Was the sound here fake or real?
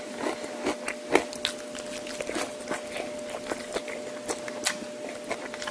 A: real